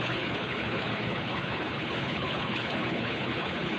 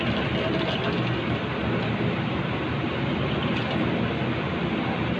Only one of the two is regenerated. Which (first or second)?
first